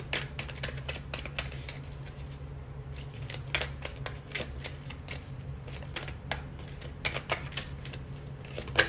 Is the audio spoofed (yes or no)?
no